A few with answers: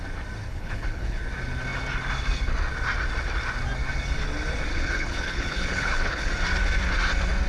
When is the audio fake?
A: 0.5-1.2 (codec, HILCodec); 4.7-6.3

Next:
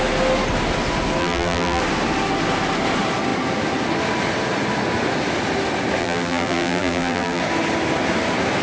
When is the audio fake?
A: 1.2-1.8 (vocoder, BigVGAN v2); 6.0-7.4

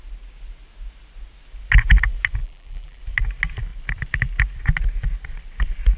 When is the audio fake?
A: 2.4-3.0 (vocoder, BigVGAN v2)

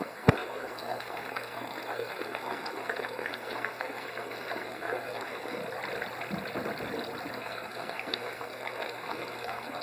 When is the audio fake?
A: 0.0-5.6 (codec, SNAC); 7.3-9.8

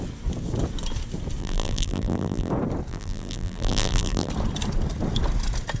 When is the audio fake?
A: 1.4-2.5 (vocoder, BigVGAN v2); 2.9-4.3